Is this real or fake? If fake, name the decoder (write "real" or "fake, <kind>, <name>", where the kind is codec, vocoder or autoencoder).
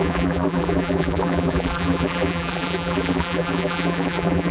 fake, vocoder, BigVGAN v2